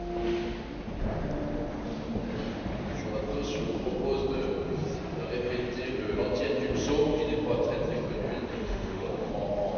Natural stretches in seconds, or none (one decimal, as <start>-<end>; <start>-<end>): 0.0-8.5; 9.3-9.8